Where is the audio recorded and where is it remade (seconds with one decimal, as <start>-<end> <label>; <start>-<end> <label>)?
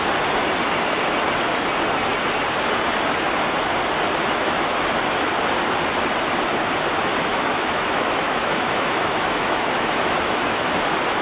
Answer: 0.0-7.3 recorded; 7.3-10.7 remade; 10.7-11.2 recorded